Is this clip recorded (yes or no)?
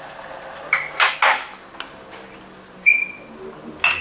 yes